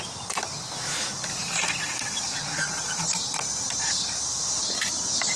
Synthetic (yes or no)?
yes